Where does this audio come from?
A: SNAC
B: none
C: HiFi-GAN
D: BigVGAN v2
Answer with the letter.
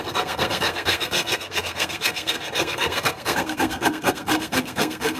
A